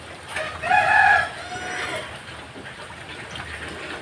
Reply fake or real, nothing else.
real